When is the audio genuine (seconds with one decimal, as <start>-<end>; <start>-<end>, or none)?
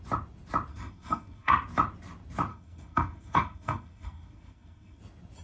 0.0-0.7; 1.5-2.5; 5.0-5.4